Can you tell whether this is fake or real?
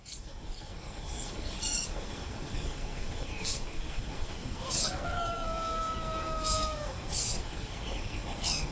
fake